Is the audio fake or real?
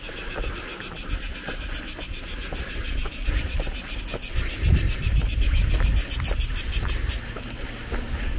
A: real